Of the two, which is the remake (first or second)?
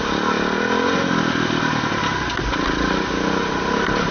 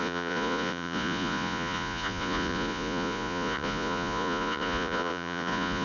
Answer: second